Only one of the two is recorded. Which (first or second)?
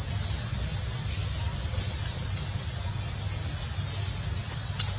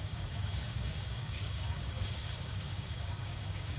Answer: first